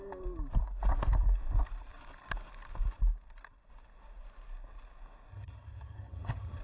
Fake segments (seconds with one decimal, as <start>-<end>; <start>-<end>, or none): 5.3-6.6